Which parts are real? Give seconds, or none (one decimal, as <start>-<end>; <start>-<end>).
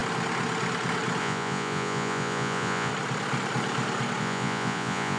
0.0-1.2; 2.9-4.2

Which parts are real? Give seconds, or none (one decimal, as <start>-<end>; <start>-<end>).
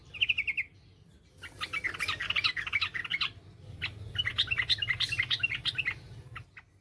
0.8-6.8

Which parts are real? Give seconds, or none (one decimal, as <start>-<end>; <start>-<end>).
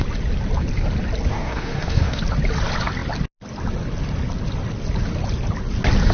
0.0-1.3; 2.2-6.1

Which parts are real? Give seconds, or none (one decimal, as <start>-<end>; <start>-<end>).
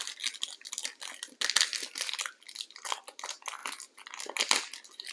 0.0-5.1